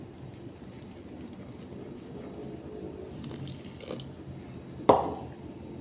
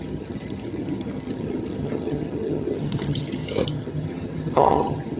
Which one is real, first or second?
first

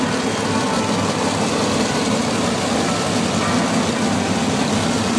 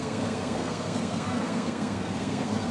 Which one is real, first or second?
first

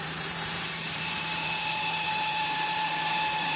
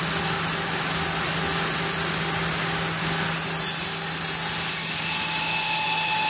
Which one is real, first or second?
second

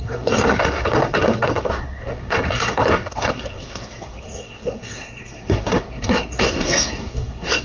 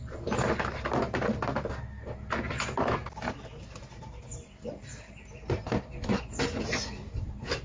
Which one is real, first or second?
second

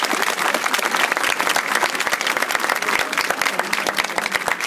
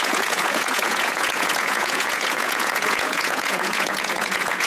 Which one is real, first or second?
first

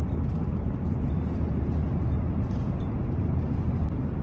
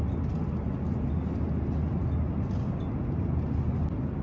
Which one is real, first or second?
second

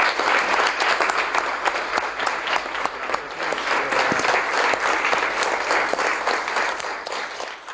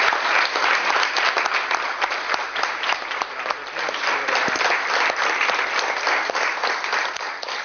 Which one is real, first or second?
first